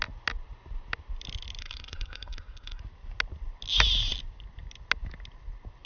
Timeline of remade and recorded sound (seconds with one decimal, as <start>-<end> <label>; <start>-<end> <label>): 0.0-1.6 recorded; 1.6-2.8 remade; 2.8-5.8 recorded